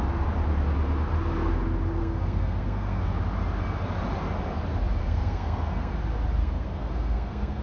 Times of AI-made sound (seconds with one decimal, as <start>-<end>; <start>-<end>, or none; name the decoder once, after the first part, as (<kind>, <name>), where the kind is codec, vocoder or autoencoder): 2.0-3.0 (codec, SNAC); 5.0-5.9; 6.4-7.6